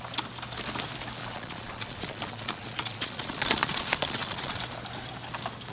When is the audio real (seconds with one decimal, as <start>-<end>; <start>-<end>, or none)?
0.0-1.2; 4.6-5.7